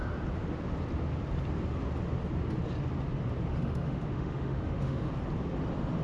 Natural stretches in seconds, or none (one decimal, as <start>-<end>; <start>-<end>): 0.0-3.5; 5.1-6.0